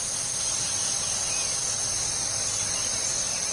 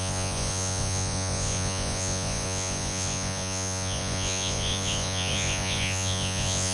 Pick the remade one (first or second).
second